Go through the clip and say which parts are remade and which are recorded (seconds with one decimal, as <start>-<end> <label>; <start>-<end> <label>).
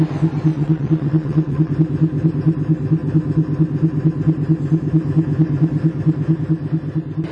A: 0.0-0.5 recorded; 0.5-1.7 remade; 1.7-7.3 recorded